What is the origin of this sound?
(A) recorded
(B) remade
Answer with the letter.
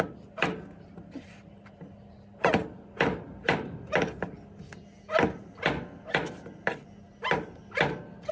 A